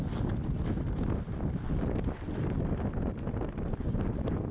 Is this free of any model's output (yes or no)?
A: yes